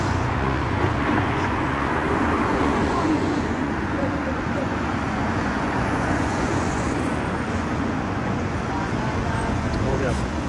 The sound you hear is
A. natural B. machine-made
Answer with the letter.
B